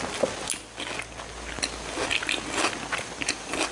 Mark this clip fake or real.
real